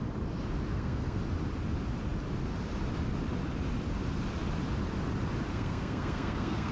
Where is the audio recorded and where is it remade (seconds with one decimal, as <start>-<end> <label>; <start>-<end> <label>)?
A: 0.0-0.7 recorded; 0.7-1.2 remade; 1.2-5.5 recorded; 5.5-6.7 remade